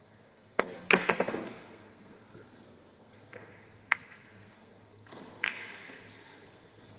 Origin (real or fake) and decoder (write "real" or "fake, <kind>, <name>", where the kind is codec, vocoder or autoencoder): fake, codec, SNAC